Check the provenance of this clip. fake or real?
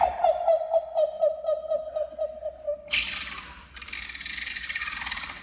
real